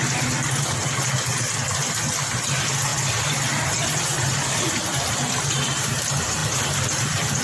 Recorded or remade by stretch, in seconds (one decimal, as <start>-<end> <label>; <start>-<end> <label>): 0.0-7.4 remade